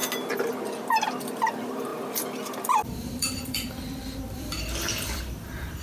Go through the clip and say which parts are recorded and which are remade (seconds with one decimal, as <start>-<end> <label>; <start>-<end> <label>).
0.0-1.2 recorded; 1.2-5.8 remade